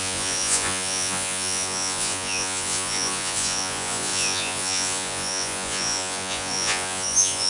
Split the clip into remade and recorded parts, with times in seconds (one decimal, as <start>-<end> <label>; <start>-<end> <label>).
0.0-7.5 remade